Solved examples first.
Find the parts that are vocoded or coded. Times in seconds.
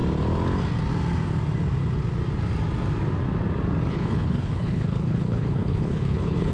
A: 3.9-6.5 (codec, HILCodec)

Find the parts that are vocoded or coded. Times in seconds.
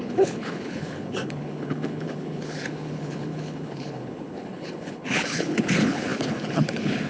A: 0.0-7.1 (codec, HILCodec)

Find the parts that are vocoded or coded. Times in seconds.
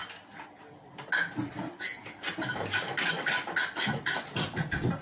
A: none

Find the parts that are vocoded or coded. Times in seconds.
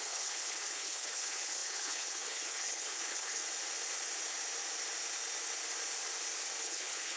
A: 0.0-3.4 (codec, HILCodec); 6.6-7.2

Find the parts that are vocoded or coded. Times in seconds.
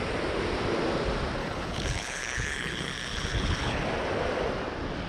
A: 1.4-3.8 (codec, HILCodec)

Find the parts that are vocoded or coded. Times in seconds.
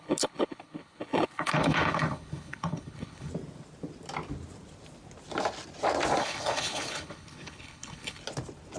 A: 0.0-3.3 (codec, HILCodec); 6.2-8.2